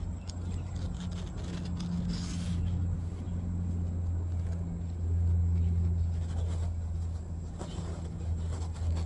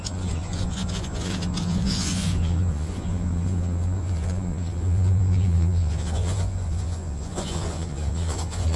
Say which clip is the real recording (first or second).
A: first